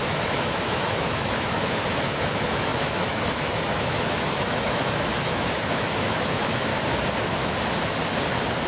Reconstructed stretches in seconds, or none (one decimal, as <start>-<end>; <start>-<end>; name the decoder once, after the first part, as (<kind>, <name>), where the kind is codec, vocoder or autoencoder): 0.0-6.7 (autoencoder, DAC-VAE)